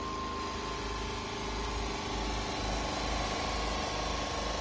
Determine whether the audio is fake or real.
real